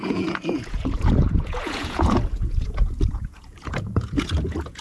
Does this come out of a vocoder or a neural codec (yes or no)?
yes